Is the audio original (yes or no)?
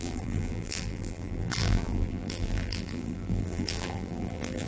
no